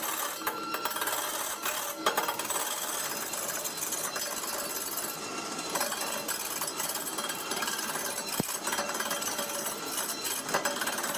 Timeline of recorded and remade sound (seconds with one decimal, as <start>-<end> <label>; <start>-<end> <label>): 0.0-11.2 recorded